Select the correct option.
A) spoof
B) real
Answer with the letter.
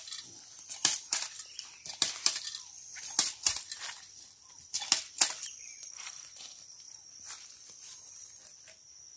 A